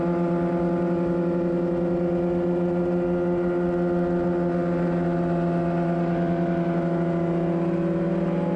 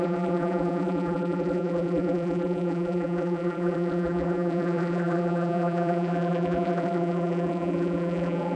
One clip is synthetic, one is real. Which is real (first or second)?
first